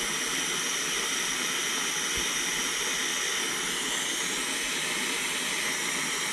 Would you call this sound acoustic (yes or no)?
yes